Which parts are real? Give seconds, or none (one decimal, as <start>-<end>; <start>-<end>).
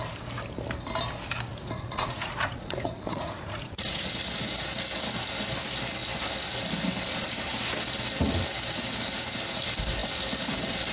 0.0-1.5; 4.1-10.9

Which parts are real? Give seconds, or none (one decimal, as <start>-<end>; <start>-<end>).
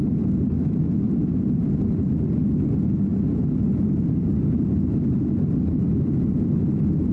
0.0-7.1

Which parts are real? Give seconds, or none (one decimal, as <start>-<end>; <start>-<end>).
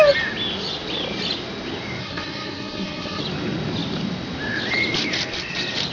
0.0-2.0; 3.2-5.9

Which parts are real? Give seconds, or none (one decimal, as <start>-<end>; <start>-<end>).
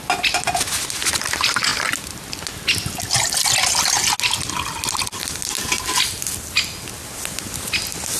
0.0-8.2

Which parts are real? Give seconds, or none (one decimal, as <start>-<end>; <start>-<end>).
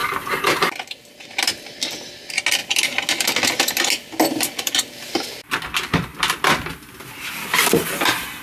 0.0-8.4